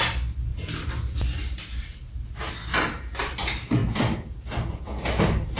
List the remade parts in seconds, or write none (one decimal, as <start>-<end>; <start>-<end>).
none